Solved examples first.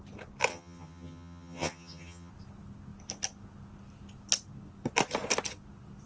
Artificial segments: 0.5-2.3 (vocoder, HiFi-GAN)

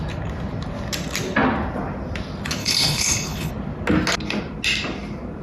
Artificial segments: 2.6-3.5 (codec, HILCodec)

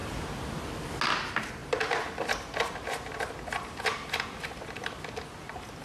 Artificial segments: 0.0-1.0 (vocoder, BigVGAN v2); 1.6-4.6

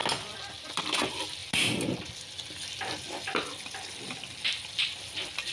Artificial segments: none

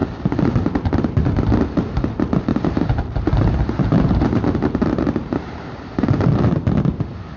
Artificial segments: 2.5-6.5 (vocoder, BigVGAN v2)

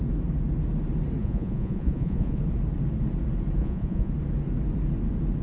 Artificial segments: 1.2-2.4 (vocoder, Vocos); 3.6-4.1